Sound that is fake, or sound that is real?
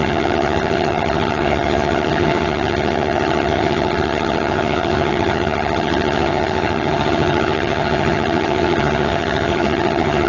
fake